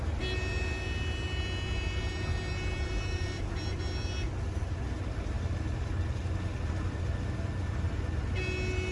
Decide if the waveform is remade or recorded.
recorded